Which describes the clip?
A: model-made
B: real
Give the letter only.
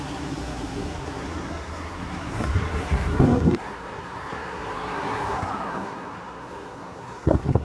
A